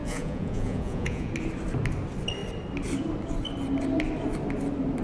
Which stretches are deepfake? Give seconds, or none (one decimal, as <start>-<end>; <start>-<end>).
0.0-1.3